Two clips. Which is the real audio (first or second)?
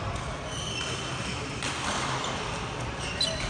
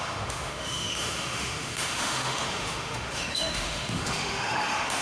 first